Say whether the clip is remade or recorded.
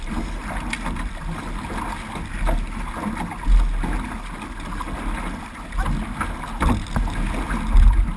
recorded